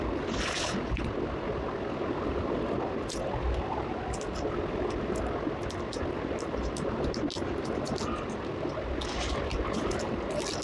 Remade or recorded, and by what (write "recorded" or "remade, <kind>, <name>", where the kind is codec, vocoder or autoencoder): recorded